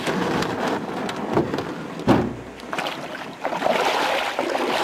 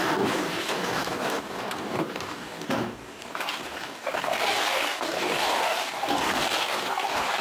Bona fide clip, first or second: first